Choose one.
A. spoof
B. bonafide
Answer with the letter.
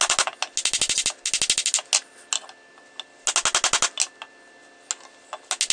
B